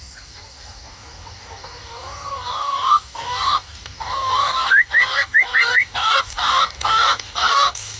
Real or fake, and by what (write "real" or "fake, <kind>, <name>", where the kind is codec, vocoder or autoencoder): fake, codec, DAC